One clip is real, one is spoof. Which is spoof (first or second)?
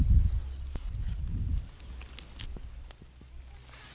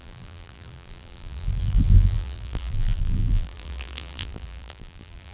second